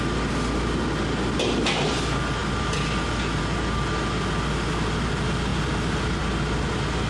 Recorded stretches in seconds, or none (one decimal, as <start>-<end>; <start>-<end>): 0.0-7.1